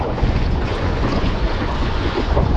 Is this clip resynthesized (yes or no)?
yes